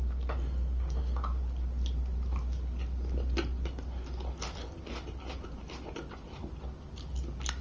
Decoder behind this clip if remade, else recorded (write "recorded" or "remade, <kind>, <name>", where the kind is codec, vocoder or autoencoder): recorded